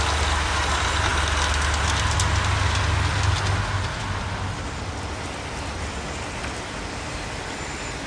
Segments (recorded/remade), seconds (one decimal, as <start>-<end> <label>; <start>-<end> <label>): 0.0-8.1 recorded